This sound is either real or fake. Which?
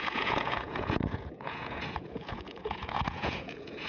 fake